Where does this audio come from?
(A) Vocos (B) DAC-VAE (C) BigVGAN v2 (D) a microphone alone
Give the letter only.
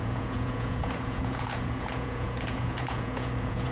A